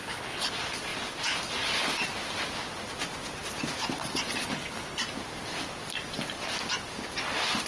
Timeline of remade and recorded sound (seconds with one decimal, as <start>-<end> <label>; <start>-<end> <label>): 0.0-0.5 remade; 0.5-4.4 recorded; 4.4-5.0 remade; 5.0-7.7 recorded